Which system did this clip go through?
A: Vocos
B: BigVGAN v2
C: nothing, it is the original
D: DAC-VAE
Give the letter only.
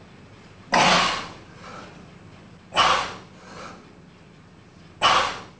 C